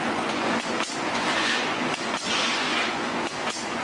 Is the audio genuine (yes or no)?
no